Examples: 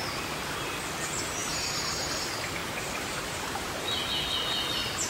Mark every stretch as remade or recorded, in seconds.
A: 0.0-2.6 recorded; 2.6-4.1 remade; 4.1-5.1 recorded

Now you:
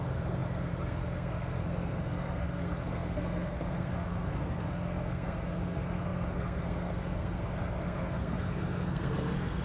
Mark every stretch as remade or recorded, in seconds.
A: 0.0-9.6 remade

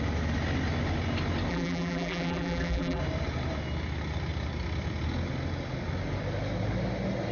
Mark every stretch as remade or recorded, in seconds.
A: 0.0-1.5 recorded; 1.5-3.0 remade; 3.0-7.3 recorded

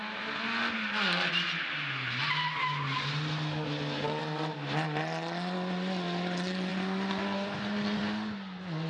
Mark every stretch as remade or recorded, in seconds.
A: 0.0-8.9 recorded

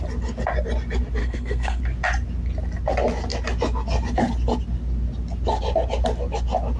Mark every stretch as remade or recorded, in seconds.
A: 0.0-1.2 recorded; 1.2-1.8 remade; 1.8-6.8 recorded

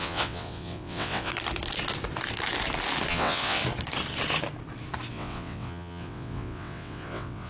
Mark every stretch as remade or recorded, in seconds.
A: 0.0-1.3 remade; 1.3-3.1 recorded; 3.1-3.6 remade; 3.6-5.1 recorded; 5.1-7.5 remade

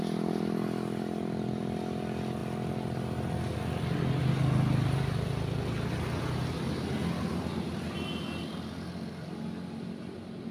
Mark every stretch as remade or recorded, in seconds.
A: 0.0-10.5 recorded